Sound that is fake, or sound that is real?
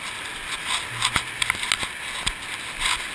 real